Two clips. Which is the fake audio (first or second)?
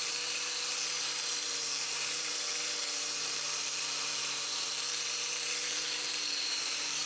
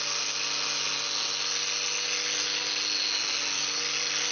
first